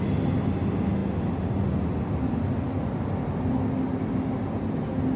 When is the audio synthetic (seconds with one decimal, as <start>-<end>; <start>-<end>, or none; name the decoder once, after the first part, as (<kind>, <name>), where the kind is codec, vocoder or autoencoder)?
none